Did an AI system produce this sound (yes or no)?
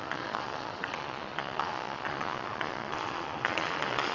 yes